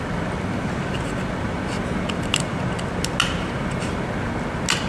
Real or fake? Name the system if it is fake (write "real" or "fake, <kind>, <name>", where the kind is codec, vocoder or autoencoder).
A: real